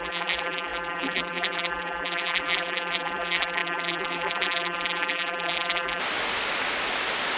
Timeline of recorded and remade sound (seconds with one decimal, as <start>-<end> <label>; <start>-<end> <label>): 0.0-6.0 remade; 6.0-7.4 recorded